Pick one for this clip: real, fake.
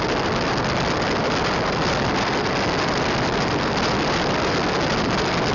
real